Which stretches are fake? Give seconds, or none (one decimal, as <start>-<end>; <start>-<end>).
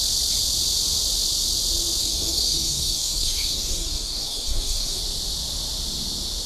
2.0-5.0